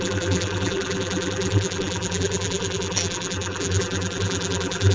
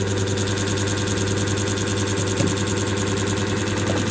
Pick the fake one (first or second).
first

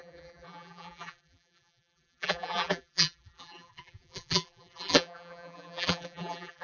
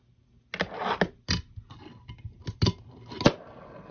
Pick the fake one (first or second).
first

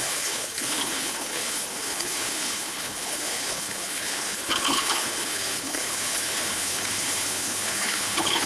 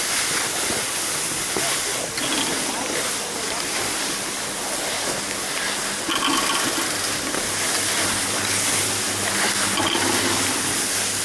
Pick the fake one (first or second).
first